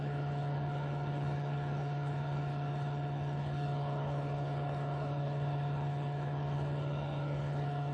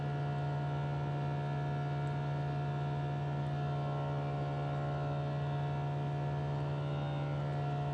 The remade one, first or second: first